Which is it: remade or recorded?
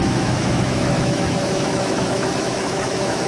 remade